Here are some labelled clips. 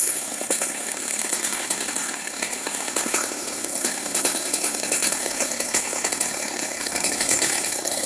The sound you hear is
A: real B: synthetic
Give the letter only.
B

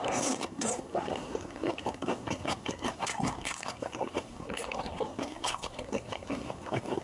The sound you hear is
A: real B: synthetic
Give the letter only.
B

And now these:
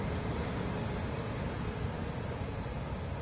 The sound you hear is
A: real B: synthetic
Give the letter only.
A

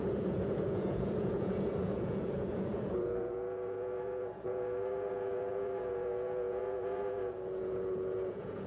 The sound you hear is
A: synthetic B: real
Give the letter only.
A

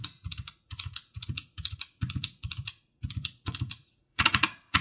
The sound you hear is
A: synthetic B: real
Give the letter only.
A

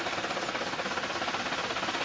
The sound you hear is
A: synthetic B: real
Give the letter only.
B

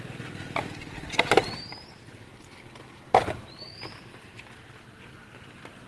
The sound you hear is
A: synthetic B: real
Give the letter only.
B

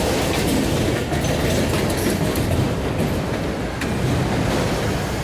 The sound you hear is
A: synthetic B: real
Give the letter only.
B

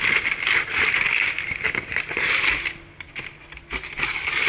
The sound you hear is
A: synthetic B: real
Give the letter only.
B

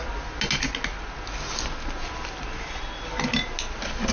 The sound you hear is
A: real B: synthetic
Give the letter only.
A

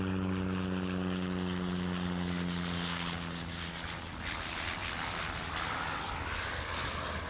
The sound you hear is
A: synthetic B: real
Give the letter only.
B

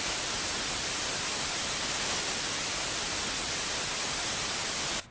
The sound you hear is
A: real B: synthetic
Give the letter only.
A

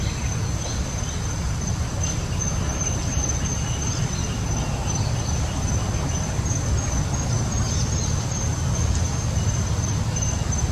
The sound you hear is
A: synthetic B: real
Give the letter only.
B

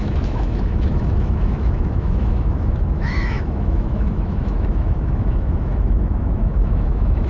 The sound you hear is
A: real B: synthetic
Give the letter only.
B